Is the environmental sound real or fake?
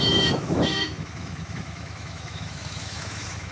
fake